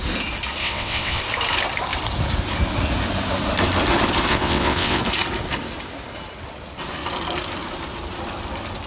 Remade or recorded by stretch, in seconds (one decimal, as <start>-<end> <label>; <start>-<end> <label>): 0.0-0.6 recorded; 0.6-1.2 remade; 1.2-4.3 recorded; 4.3-5.0 remade; 5.0-8.9 recorded